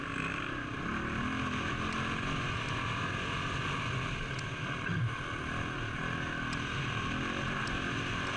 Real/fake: real